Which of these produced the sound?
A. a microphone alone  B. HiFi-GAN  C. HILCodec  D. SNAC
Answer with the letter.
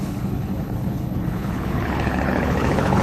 C